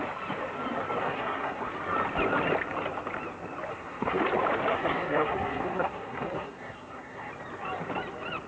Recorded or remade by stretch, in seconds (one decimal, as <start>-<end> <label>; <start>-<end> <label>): 0.0-1.0 recorded; 1.0-1.7 remade; 1.7-3.7 recorded; 3.7-4.2 remade; 4.2-4.7 recorded; 4.7-7.3 remade; 7.3-8.5 recorded